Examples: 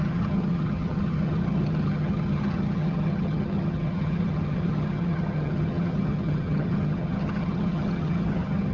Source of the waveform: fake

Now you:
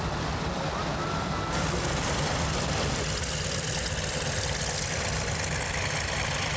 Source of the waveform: real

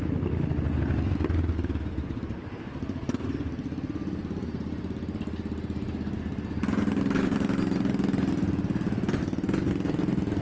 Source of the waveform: real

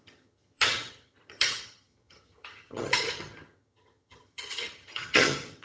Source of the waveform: fake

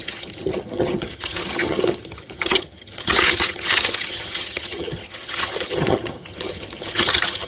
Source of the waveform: fake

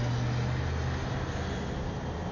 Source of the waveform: real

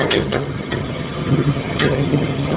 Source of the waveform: fake